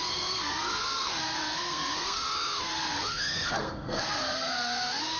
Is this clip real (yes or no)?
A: no